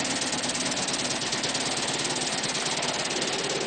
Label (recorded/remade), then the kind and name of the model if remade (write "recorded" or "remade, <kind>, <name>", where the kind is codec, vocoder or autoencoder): recorded